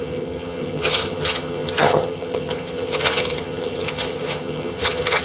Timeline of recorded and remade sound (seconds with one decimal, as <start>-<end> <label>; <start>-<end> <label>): 0.0-5.2 remade